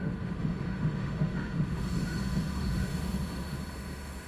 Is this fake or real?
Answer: fake